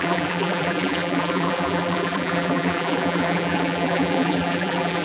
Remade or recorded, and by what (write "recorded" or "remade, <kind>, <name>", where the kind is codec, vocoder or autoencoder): remade, vocoder, BigVGAN v2